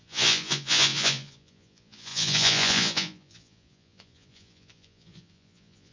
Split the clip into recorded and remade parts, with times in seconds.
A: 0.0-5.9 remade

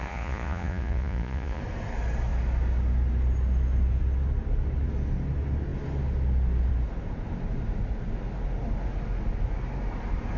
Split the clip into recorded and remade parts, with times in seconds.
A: 0.0-1.6 remade; 1.6-10.4 recorded